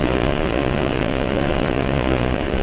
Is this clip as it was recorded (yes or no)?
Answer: no